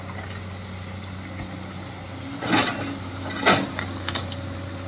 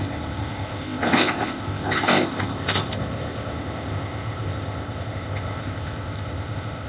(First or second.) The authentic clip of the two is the first